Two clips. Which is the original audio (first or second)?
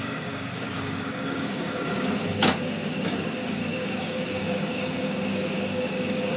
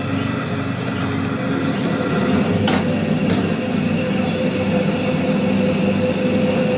second